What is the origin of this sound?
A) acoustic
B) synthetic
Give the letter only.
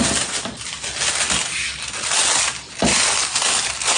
A